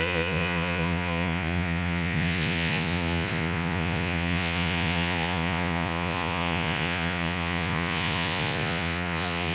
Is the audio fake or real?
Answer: fake